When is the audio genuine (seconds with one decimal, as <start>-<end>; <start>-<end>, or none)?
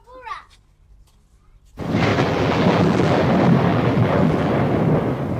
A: 0.0-2.1; 3.2-3.7; 4.5-5.4